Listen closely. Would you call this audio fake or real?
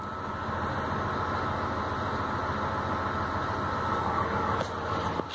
real